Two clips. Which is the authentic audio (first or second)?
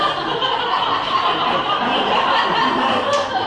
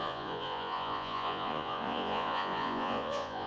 first